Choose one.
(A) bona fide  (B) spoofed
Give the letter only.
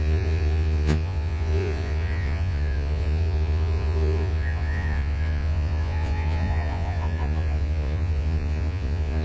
B